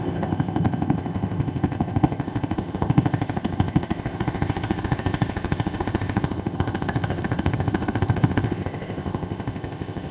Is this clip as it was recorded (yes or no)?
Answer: no